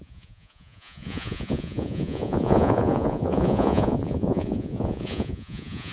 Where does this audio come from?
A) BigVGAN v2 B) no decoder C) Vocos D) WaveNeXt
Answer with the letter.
C